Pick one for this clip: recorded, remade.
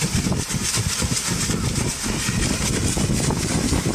recorded